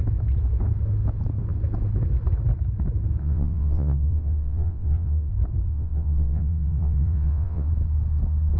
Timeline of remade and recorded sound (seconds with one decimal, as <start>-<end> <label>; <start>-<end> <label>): 0.0-3.2 recorded; 3.2-5.3 remade; 5.3-5.7 recorded; 5.7-7.7 remade; 7.7-8.6 recorded